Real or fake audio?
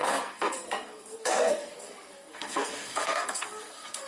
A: fake